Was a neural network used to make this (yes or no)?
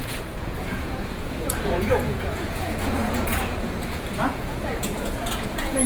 yes